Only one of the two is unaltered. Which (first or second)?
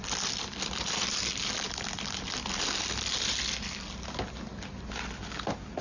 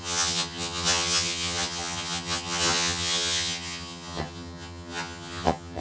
first